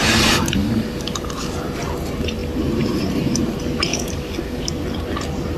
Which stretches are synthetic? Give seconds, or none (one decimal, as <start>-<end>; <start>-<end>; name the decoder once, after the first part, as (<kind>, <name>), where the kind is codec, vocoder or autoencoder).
0.6-1.5 (codec, DAC); 3.9-4.7